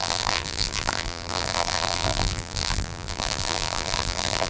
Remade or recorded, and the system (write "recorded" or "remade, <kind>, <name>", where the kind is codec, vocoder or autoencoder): remade, vocoder, BigVGAN v2